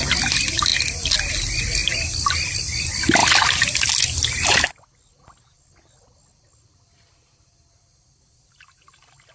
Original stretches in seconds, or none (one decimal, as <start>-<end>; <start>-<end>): 0.0-9.3